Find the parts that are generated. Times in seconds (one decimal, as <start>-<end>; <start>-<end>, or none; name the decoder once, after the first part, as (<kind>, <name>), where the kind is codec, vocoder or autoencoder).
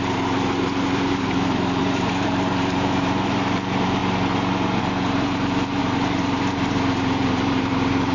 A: 0.0-4.0 (vocoder, BigVGAN v2); 4.8-8.1